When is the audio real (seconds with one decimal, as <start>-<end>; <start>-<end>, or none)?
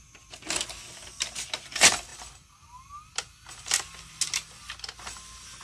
0.0-5.6